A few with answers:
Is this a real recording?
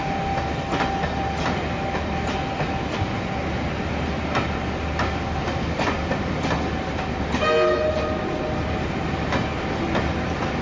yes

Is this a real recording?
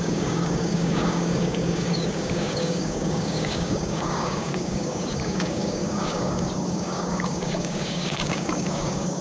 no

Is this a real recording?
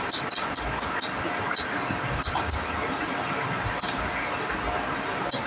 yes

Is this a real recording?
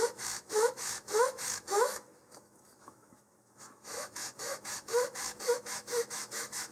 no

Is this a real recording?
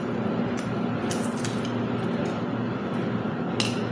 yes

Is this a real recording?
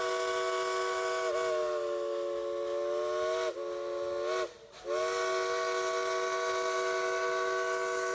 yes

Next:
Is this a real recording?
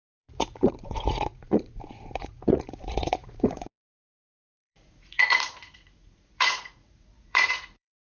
no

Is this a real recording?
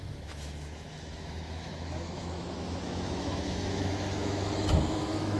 no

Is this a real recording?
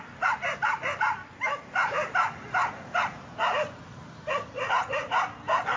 yes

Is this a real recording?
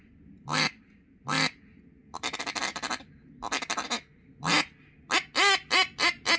yes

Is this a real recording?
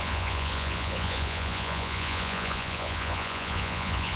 no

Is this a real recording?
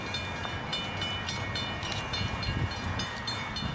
no